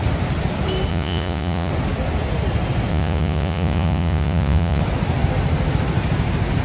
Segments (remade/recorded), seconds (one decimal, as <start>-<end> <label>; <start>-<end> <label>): 0.0-0.9 recorded; 0.9-1.7 remade; 1.7-2.9 recorded; 2.9-4.8 remade; 4.8-6.6 recorded